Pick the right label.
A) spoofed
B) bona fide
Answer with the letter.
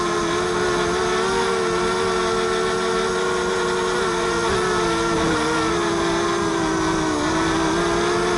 B